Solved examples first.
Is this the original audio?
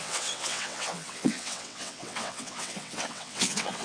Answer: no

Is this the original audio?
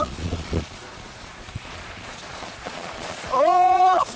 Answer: no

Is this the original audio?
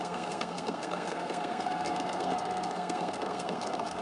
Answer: no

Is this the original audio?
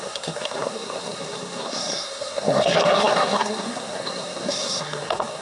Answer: no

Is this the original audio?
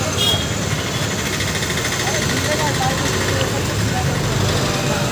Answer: yes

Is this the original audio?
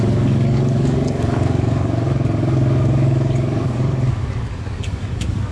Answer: no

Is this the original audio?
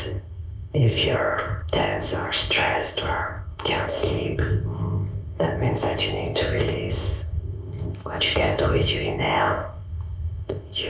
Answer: no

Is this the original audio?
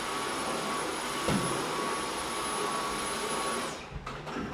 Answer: yes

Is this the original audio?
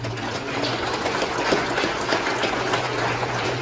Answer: no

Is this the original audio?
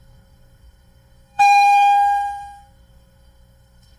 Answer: no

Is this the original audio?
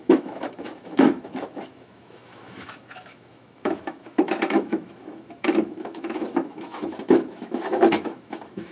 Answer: no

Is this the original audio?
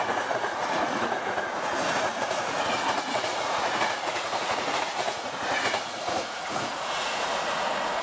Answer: no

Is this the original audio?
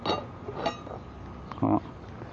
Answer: yes